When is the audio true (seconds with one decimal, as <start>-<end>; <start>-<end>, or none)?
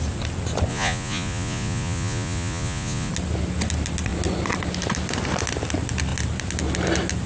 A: 0.0-0.7; 3.1-7.3